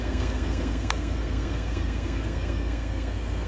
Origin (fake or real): fake